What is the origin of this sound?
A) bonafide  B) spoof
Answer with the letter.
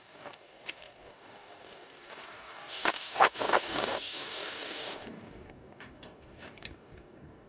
B